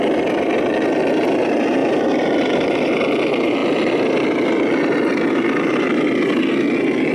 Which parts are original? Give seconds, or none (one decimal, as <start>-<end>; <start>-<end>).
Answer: 0.0-1.8; 3.0-3.6; 6.4-7.1